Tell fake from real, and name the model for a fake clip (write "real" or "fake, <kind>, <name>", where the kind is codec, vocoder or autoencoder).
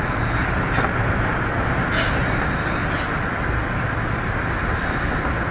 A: real